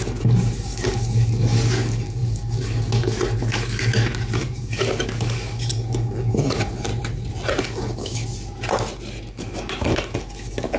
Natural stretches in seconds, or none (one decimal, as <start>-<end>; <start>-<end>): 6.9-7.6; 8.2-9.3